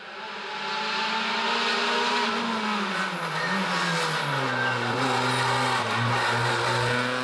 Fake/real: real